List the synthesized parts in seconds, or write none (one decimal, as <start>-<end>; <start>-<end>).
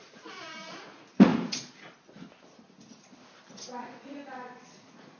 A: 0.0-1.3; 3.8-4.2; 4.8-5.2